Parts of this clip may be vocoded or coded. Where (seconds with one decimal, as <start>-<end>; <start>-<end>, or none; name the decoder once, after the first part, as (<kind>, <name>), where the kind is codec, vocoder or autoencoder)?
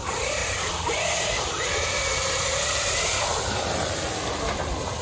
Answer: 0.0-0.4 (vocoder, BigVGAN v2); 2.3-5.0